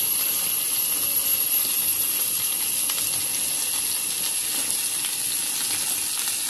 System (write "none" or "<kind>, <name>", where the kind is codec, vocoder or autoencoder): none